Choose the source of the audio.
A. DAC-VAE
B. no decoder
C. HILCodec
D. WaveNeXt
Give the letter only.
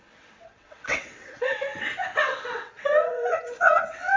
D